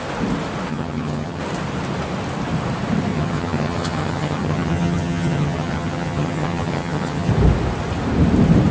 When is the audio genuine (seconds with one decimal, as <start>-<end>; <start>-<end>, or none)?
0.0-0.7; 1.4-3.1; 7.3-8.7